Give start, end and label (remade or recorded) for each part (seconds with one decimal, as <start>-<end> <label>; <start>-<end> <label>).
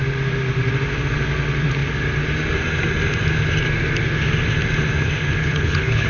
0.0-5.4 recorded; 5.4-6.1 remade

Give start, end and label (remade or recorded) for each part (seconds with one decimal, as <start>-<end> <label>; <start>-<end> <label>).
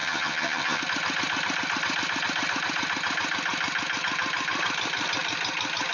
0.0-0.8 remade; 0.8-5.9 recorded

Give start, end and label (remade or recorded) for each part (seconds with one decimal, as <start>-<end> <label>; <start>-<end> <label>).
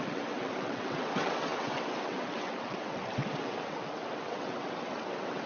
0.0-5.5 remade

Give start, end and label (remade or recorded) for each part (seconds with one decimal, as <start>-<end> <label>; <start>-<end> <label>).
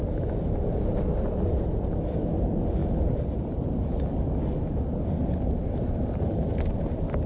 0.0-7.3 recorded